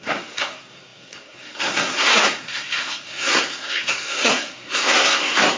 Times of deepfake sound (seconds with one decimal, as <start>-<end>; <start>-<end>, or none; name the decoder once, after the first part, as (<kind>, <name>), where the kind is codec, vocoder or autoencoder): 0.0-5.6 (codec, SNAC)